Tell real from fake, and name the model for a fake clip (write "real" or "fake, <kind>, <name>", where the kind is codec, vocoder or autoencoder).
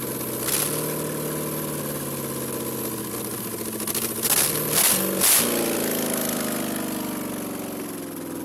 real